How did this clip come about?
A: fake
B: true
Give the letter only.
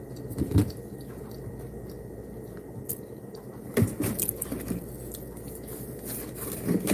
B